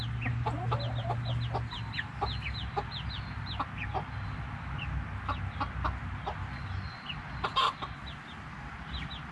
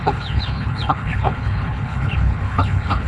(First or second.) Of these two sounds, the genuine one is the first